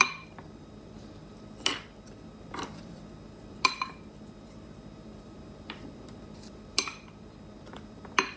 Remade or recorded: remade